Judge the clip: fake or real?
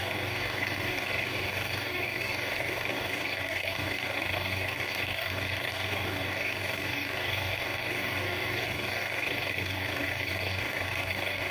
fake